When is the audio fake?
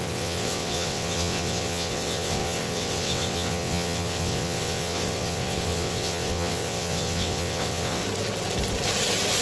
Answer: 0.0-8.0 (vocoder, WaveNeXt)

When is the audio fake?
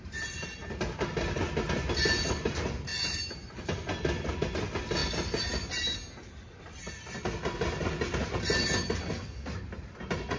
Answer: 2.9-4.3 (vocoder, BigVGAN v2)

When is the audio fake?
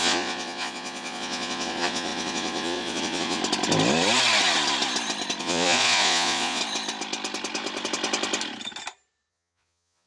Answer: 0.0-3.4 (vocoder, Vocos); 5.4-6.6; 9.3-10.1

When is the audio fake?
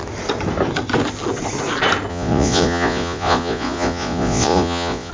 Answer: 2.1-5.1 (vocoder, Vocos)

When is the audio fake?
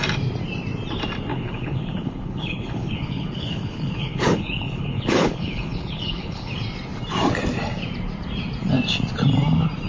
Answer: 1.3-6.5 (codec, HILCodec)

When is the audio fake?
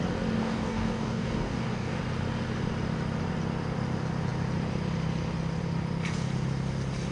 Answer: 0.4-2.0 (codec, DAC)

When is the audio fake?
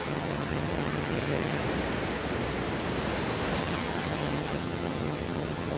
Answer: 0.0-1.6 (vocoder, HiFi-GAN); 3.6-5.8